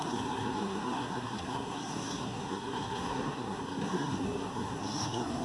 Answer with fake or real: fake